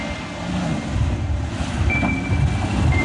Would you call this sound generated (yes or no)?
no